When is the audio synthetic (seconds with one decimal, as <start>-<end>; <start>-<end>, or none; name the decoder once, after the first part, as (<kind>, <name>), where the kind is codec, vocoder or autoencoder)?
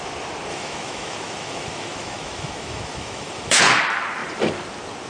0.5-3.6 (autoencoder, DAC-VAE)